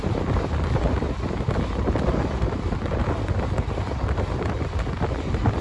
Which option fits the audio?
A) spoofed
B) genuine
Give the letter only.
B